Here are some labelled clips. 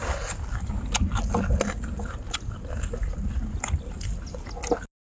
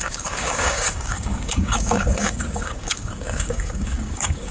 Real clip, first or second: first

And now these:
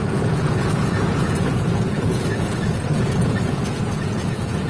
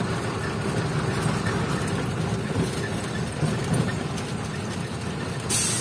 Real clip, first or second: second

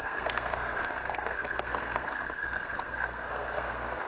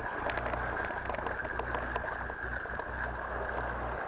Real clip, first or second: second